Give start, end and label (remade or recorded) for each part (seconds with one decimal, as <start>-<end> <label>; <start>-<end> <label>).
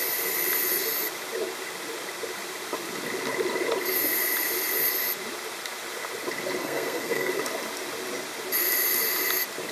0.0-6.6 recorded; 6.6-7.3 remade; 7.3-9.7 recorded